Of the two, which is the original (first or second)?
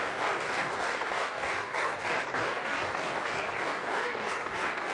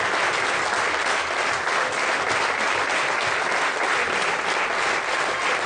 second